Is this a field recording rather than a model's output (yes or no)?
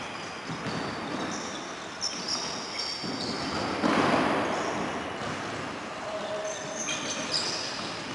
yes